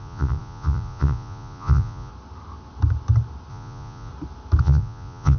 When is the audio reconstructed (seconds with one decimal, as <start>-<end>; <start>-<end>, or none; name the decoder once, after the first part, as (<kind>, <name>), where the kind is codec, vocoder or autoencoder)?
0.0-2.1 (vocoder, Vocos); 3.5-4.1; 4.6-5.4